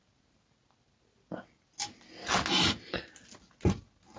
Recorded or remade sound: recorded